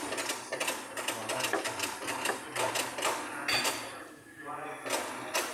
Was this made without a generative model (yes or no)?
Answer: yes